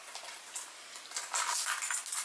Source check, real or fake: real